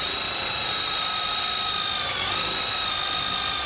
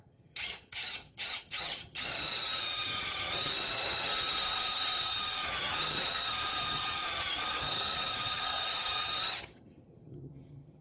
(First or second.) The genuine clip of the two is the first